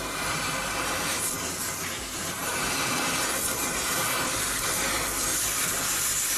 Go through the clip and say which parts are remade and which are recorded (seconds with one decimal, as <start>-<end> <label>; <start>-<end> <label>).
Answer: 0.0-6.4 remade